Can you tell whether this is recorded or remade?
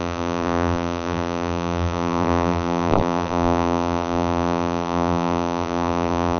remade